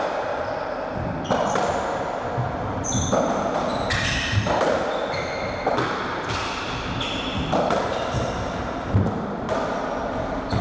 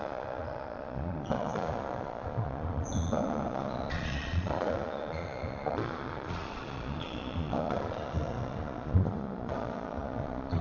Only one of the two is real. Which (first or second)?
first